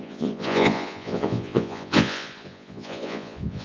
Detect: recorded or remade remade